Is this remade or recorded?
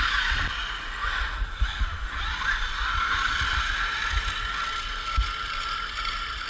recorded